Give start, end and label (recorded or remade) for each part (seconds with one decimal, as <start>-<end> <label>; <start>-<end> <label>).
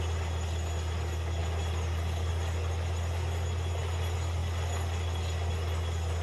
0.0-6.2 recorded